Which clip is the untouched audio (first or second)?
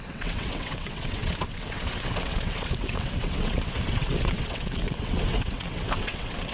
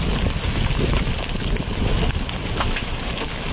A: second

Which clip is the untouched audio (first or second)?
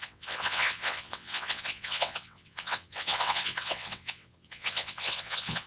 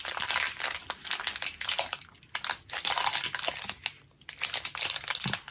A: second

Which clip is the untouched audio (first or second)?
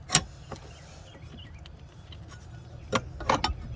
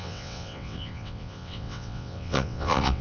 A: first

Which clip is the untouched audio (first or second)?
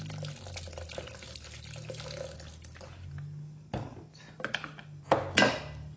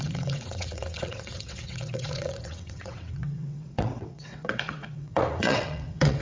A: first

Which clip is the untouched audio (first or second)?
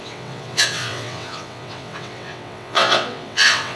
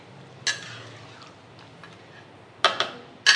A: second